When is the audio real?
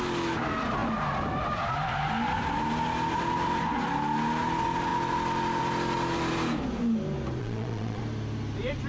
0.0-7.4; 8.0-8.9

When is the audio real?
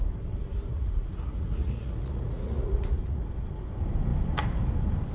0.0-0.7; 3.2-5.1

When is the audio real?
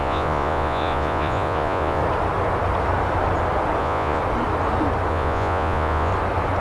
2.0-3.8; 4.2-5.1; 6.1-6.6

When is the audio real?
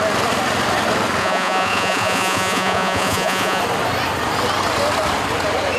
0.0-1.2; 3.6-5.8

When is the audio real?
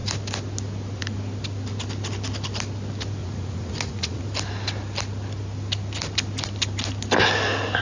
0.0-3.2; 4.2-7.8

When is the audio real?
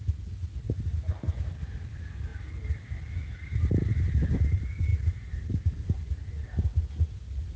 0.0-7.6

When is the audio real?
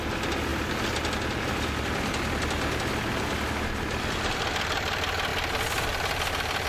0.0-6.7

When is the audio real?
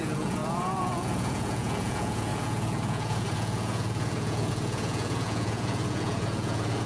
none